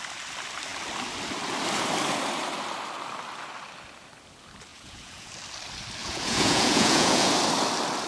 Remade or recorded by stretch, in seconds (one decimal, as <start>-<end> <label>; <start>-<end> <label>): 0.0-4.7 recorded; 4.7-5.3 remade; 5.3-6.0 recorded; 6.0-7.3 remade; 7.3-8.1 recorded

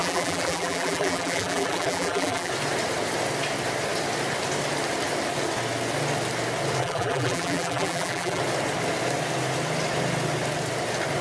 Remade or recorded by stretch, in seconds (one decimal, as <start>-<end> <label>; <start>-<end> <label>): 0.0-2.5 remade; 2.5-6.8 recorded; 6.8-8.4 remade; 8.4-11.2 recorded

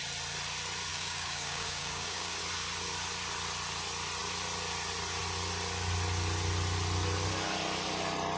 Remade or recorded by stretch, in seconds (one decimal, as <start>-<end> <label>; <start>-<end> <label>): 0.0-0.9 recorded; 0.9-2.4 remade; 2.4-8.4 recorded

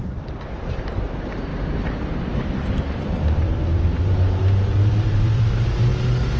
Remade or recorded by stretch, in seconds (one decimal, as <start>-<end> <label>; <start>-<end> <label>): 0.0-5.9 remade; 5.9-6.4 recorded

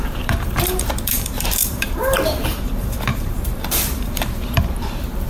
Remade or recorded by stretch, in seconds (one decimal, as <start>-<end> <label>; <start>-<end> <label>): 0.0-5.3 remade

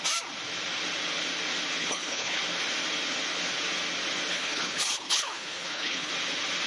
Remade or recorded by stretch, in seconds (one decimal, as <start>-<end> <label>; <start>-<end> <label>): 0.0-1.8 recorded; 1.8-2.4 remade; 2.4-4.3 recorded; 4.3-6.1 remade; 6.1-6.7 recorded